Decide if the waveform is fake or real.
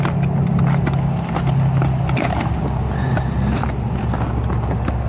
real